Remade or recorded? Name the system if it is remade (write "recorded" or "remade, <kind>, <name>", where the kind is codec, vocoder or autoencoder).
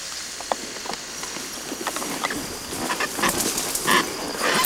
recorded